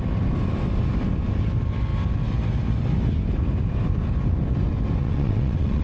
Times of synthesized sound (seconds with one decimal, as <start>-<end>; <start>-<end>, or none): 5.0-5.8